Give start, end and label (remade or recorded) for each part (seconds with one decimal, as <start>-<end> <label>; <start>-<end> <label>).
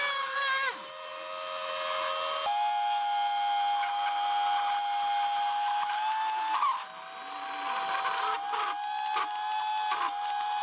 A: 0.0-10.6 recorded